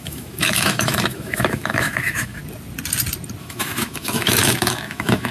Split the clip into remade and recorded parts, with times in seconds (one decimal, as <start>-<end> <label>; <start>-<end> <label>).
0.0-2.4 remade; 2.4-3.4 recorded; 3.4-5.3 remade